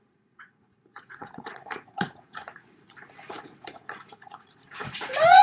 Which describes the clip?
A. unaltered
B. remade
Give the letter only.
B